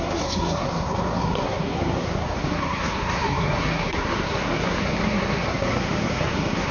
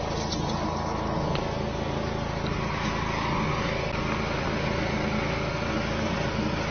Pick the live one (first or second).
second